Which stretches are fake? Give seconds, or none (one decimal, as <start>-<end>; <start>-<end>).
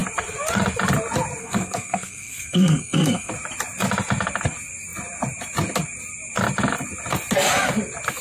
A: 1.4-3.3